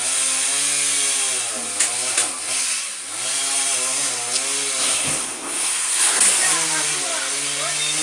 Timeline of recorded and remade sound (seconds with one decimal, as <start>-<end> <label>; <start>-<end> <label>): 0.0-4.8 recorded; 4.8-6.2 remade; 6.2-8.0 recorded